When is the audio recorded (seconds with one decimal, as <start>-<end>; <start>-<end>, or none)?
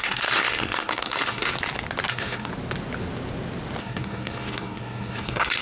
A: 1.5-2.1; 2.5-3.8